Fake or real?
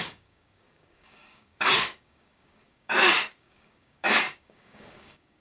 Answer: fake